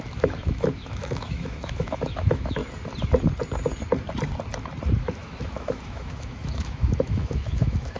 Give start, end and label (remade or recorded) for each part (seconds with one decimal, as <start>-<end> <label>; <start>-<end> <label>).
0.0-2.6 remade; 2.6-5.0 recorded; 5.0-8.0 remade